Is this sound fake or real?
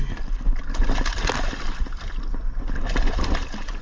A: real